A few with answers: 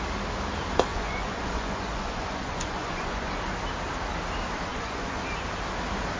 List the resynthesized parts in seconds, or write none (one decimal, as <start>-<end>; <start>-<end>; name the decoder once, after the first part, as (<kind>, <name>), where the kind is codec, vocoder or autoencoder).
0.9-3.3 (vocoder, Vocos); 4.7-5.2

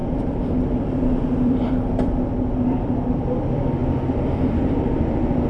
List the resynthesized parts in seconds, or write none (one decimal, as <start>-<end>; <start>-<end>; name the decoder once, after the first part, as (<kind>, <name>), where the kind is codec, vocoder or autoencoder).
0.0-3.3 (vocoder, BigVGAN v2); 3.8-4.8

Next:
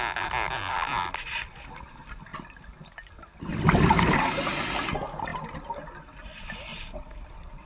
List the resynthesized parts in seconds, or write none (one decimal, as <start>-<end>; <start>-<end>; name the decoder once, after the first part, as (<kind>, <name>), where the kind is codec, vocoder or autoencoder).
2.3-2.9 (vocoder, BigVGAN v2); 6.7-7.7

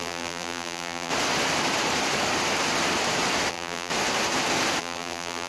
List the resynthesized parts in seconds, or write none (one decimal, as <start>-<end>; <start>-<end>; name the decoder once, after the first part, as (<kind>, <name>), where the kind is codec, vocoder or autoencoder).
0.0-1.1 (vocoder, BigVGAN v2); 3.5-3.9; 4.8-5.5